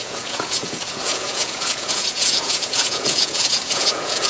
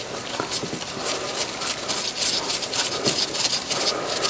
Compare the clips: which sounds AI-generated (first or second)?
first